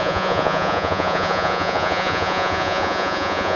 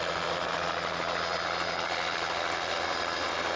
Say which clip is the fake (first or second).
first